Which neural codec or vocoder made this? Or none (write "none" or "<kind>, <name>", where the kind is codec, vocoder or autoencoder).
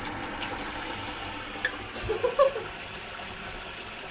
none